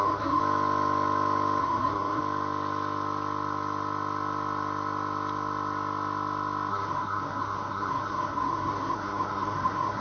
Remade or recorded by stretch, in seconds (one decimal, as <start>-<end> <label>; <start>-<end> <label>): 0.0-0.4 remade; 0.4-1.6 recorded; 1.6-2.2 remade; 2.2-6.7 recorded; 6.7-10.0 remade